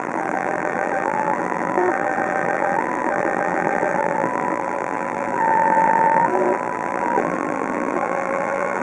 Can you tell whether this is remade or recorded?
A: remade